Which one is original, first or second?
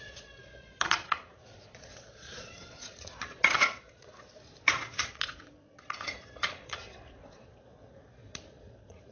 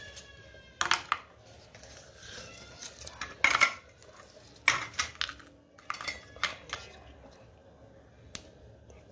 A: second